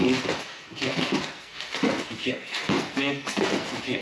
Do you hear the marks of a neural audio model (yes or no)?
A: yes